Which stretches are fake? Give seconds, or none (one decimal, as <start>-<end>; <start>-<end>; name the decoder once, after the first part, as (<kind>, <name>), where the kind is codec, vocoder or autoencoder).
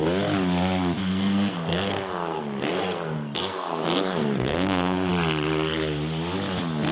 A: 1.0-5.1 (codec, SNAC)